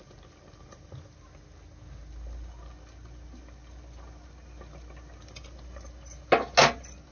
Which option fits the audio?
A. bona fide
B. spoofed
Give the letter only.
A